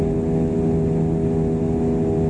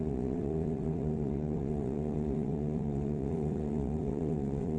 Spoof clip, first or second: second